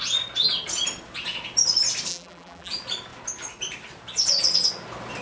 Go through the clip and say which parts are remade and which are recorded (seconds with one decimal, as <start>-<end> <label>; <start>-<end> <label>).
0.0-2.1 recorded; 2.1-2.7 remade; 2.7-5.2 recorded